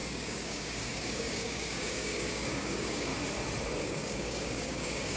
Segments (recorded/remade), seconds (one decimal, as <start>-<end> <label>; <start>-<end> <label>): 0.0-3.1 remade; 3.1-3.8 recorded; 3.8-5.2 remade